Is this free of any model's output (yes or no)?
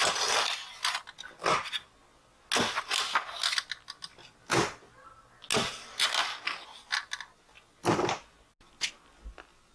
yes